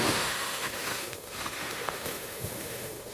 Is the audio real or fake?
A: fake